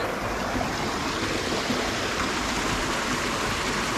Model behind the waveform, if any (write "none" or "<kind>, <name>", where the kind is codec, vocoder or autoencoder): none